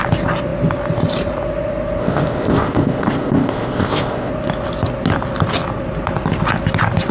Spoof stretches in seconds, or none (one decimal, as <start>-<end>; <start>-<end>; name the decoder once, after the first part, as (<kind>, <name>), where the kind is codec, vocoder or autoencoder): 2.0-4.3 (codec, ZipCodec)